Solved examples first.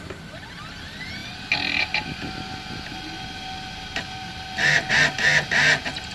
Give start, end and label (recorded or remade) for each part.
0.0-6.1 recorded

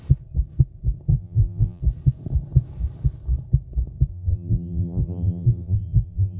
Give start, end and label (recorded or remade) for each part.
0.0-1.1 recorded; 1.1-1.8 remade; 1.8-4.1 recorded; 4.1-6.4 remade

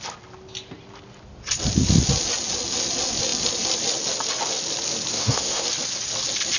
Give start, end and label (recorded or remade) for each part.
0.0-5.1 recorded; 5.1-5.6 remade; 5.6-6.6 recorded

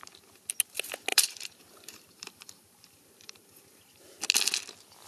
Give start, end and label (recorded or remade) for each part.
0.0-1.1 recorded; 1.1-4.0 remade; 4.0-5.1 recorded

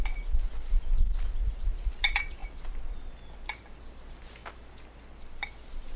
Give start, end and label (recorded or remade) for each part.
0.0-6.0 recorded

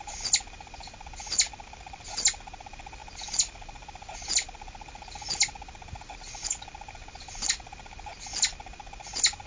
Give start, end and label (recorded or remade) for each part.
0.0-9.5 recorded

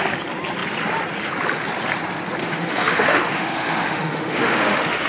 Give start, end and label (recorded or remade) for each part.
0.0-2.4 recorded; 2.4-5.1 remade